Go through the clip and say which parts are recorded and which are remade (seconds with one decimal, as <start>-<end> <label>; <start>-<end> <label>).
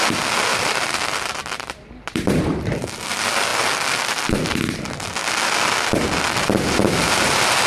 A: 0.0-0.5 recorded; 0.5-2.4 remade; 2.4-7.7 recorded